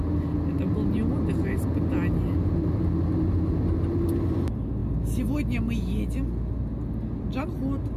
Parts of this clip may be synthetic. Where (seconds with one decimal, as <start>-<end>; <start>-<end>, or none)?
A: none